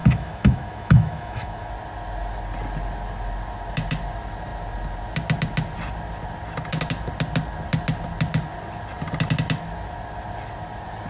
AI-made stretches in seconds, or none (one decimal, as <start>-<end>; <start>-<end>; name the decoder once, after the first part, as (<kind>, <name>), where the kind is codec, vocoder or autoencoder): 0.0-1.7 (autoencoder, DAC-VAE)